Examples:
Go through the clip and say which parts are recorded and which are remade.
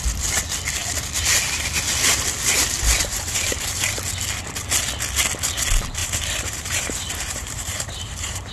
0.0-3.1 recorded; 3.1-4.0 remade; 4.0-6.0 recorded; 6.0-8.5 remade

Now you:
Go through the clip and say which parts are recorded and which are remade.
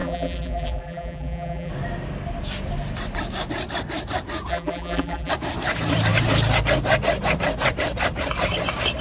0.0-1.7 remade; 1.7-4.5 recorded; 4.5-5.3 remade; 5.3-9.0 recorded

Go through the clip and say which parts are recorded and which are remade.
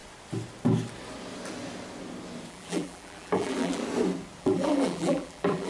0.0-2.5 recorded; 2.5-3.8 remade; 3.8-4.4 recorded; 4.4-5.7 remade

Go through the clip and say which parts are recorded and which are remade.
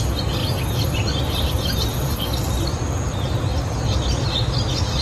0.0-0.4 recorded; 0.4-2.7 remade; 2.7-5.0 recorded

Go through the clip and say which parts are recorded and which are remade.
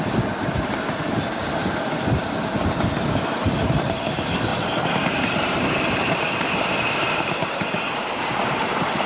0.0-4.5 recorded; 4.5-8.1 remade; 8.1-9.1 recorded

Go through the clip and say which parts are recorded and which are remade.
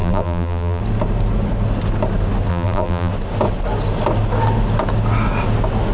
0.0-0.8 remade; 0.8-2.5 recorded; 2.5-3.1 remade; 3.1-5.9 recorded